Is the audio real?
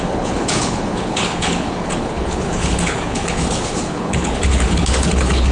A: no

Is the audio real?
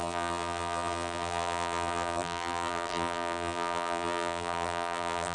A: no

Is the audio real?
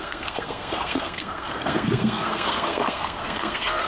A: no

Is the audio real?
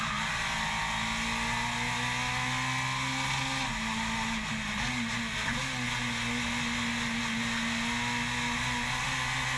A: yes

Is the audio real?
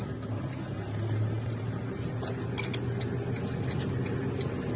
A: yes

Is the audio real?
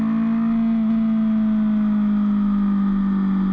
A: yes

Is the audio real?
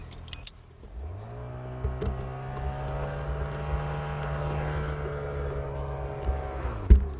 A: yes